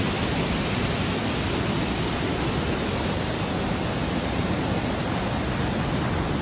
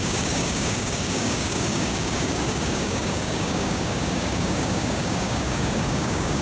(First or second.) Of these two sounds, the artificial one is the second